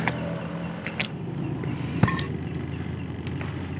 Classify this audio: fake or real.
fake